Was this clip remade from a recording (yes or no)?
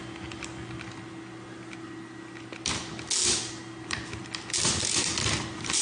no